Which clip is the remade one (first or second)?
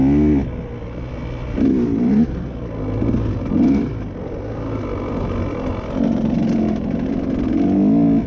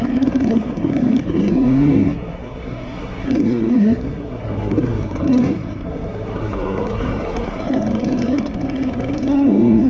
second